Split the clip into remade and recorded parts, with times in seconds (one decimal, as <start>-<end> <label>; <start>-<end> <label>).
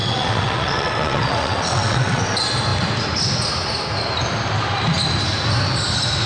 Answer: 0.0-2.2 remade; 2.2-6.3 recorded